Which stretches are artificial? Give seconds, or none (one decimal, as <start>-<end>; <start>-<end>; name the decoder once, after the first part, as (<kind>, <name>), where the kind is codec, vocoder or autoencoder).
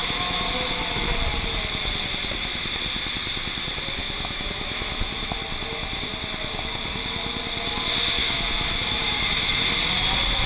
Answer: 0.0-0.5 (autoencoder, DAC-VAE); 4.0-5.3; 8.2-9.6